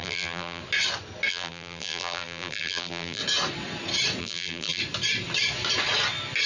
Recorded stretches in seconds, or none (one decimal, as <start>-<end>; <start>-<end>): 0.6-1.3; 3.2-4.2; 4.8-6.5